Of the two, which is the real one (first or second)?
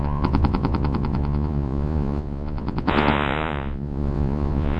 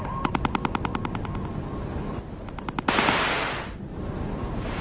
second